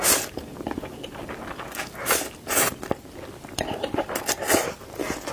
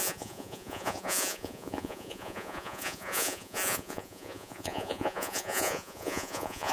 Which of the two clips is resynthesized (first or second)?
second